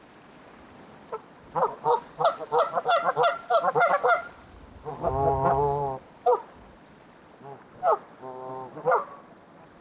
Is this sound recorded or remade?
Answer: recorded